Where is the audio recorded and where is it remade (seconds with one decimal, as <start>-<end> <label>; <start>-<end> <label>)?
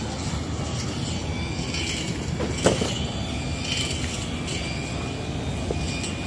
0.0-6.3 recorded